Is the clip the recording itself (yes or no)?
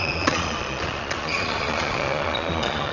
no